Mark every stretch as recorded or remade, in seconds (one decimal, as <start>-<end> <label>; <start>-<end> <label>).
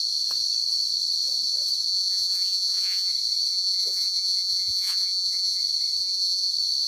0.0-1.9 recorded; 1.9-3.1 remade; 3.1-3.5 recorded; 3.5-5.6 remade; 5.6-6.0 recorded; 6.0-6.5 remade; 6.5-6.9 recorded